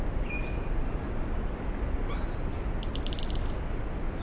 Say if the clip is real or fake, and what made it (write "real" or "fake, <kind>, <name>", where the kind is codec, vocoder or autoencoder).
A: real